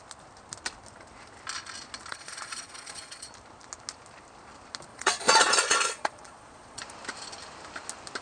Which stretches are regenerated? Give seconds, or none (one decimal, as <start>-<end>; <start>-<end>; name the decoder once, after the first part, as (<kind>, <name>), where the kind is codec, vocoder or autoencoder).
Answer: 2.1-3.3 (vocoder, Vocos); 4.9-6.8